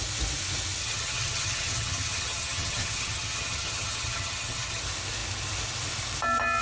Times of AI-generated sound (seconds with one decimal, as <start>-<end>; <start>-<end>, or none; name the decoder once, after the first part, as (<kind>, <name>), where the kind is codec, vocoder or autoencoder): 0.8-4.8 (vocoder, HiFi-GAN)